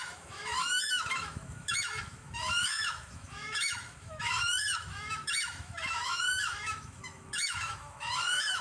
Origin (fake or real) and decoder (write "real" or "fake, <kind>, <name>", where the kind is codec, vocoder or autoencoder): fake, autoencoder, DAC-VAE